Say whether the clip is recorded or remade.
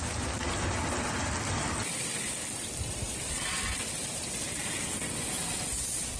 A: recorded